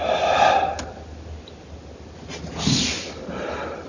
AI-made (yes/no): no